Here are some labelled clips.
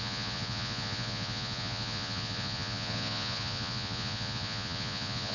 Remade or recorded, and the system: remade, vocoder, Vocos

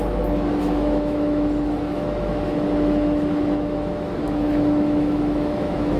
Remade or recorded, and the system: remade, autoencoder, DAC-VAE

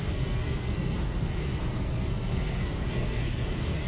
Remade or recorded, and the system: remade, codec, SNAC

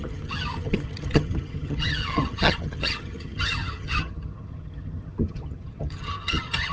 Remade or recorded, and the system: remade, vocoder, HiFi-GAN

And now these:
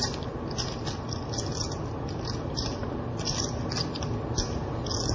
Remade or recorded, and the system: recorded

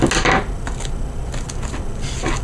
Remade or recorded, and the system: recorded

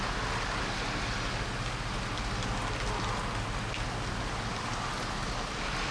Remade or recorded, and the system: recorded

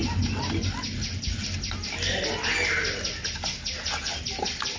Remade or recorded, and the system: recorded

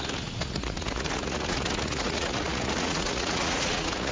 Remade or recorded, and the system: remade, vocoder, Vocos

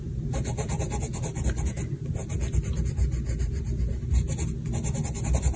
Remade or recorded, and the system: recorded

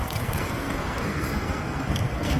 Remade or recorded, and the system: remade, codec, SNAC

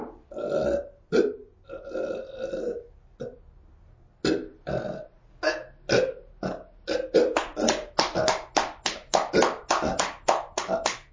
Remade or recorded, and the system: recorded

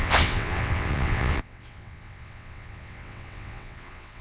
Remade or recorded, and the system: remade, vocoder, WaveNeXt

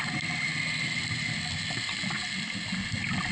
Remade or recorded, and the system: recorded